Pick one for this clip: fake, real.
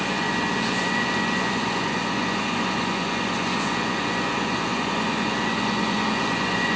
fake